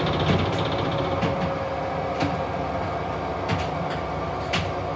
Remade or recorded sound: recorded